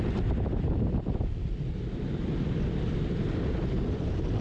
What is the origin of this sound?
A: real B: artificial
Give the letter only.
B